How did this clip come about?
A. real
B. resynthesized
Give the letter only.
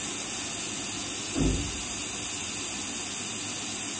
A